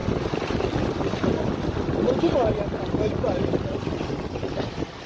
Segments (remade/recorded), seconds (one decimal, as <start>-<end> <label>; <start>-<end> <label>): 0.0-5.1 recorded